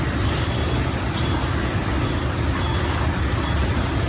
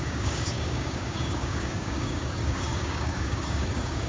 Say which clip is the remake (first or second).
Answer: second